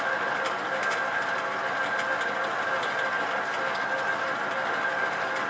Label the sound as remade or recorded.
recorded